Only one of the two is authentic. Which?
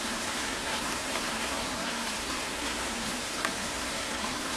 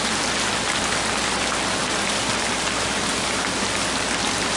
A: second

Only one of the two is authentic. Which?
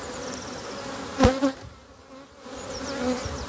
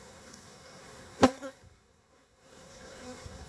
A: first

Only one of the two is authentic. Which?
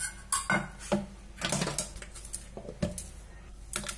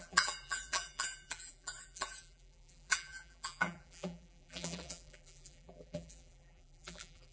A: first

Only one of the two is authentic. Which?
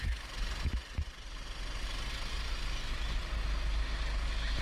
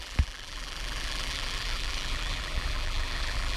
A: first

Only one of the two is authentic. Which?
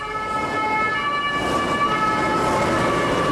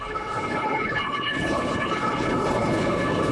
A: first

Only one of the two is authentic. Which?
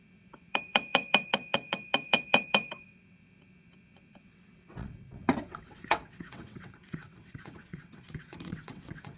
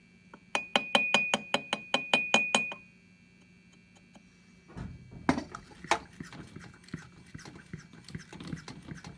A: second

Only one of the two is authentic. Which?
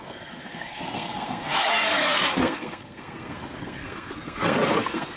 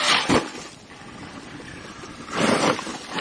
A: second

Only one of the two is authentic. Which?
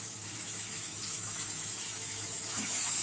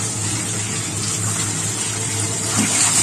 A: second